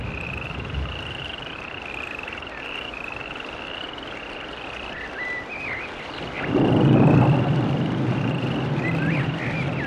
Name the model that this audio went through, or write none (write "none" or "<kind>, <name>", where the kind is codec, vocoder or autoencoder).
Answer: none